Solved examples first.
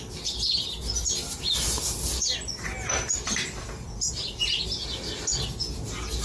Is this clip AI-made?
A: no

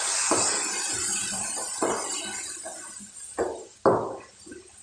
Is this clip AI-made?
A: no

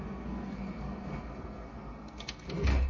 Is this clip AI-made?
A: yes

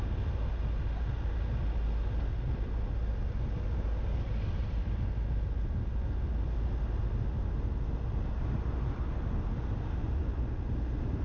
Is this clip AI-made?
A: no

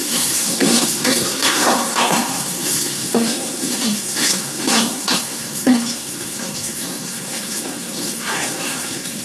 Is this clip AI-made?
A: yes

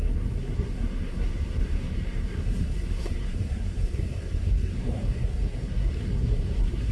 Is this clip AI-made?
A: yes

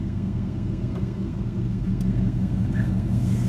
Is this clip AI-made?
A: yes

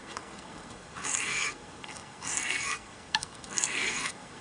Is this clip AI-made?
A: yes